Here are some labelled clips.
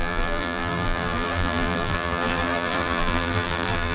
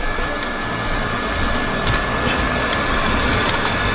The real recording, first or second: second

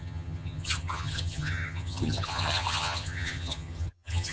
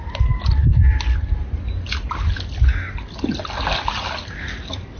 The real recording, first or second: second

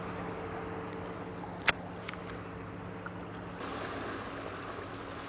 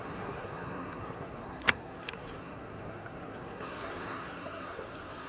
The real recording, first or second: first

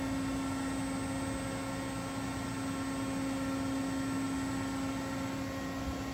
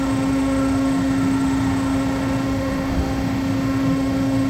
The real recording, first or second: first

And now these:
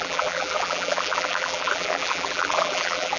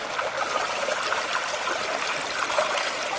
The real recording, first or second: second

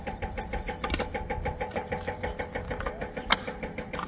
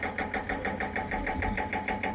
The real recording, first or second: first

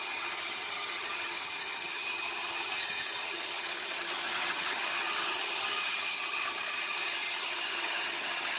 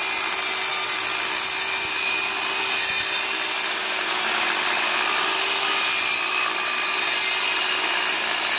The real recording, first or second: second